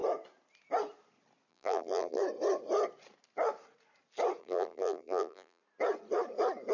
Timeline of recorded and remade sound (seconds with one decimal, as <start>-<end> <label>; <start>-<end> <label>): 0.0-1.5 recorded; 1.5-2.2 remade; 2.2-4.4 recorded; 4.4-5.6 remade; 5.6-6.7 recorded